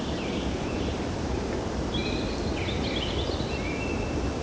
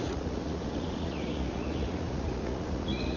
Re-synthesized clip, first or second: second